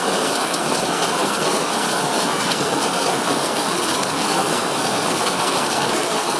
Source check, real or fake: fake